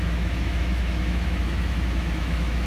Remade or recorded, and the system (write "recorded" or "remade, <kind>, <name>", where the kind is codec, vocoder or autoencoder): remade, autoencoder, DAC-VAE